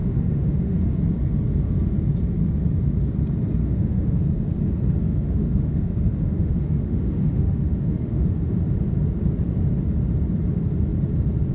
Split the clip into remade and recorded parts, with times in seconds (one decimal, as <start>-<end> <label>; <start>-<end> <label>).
0.0-1.0 remade; 1.0-3.6 recorded; 3.6-4.2 remade; 4.2-5.0 recorded; 5.0-8.5 remade; 8.5-11.5 recorded